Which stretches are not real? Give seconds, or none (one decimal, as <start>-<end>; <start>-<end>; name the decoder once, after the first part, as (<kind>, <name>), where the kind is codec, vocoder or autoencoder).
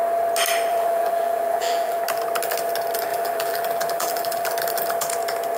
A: 0.7-2.0 (vocoder, BigVGAN v2); 3.1-4.5